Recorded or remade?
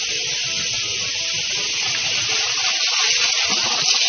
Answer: recorded